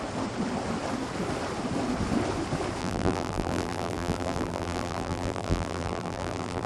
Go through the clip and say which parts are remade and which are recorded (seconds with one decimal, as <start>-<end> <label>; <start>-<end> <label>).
0.0-2.8 recorded; 2.8-6.7 remade